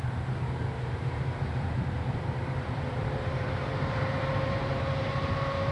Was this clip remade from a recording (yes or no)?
yes